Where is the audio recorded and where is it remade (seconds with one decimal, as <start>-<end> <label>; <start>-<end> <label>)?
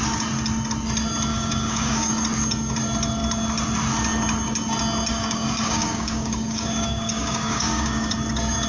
0.0-1.3 recorded; 1.3-2.1 remade; 2.1-5.1 recorded; 5.1-8.1 remade; 8.1-8.7 recorded